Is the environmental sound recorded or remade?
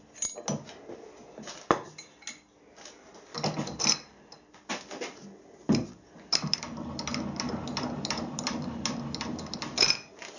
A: recorded